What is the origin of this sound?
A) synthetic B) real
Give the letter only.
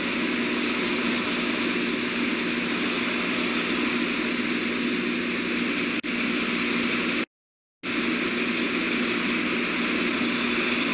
B